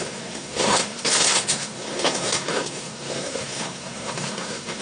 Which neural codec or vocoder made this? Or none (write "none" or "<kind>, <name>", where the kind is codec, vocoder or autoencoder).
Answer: codec, SNAC